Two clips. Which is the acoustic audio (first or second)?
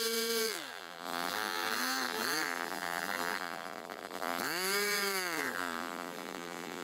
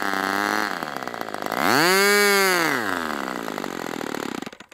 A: second